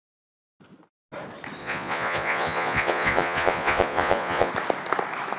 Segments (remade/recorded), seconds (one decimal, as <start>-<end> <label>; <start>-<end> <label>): 0.0-1.6 recorded; 1.6-4.5 remade; 4.5-5.4 recorded